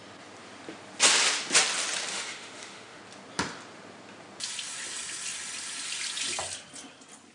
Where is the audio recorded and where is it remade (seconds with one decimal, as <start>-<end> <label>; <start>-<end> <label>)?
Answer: 0.0-2.1 recorded; 2.1-3.0 remade; 3.0-7.3 recorded